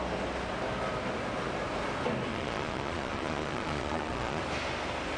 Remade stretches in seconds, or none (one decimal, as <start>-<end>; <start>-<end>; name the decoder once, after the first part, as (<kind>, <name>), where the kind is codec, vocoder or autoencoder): 2.3-4.4 (vocoder, Vocos)